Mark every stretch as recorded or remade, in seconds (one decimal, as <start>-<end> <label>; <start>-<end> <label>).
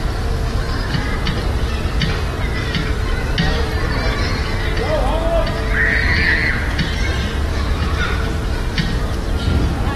0.0-7.5 recorded; 7.5-8.0 remade; 8.0-10.0 recorded